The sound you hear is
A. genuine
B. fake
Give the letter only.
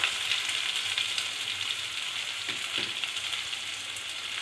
A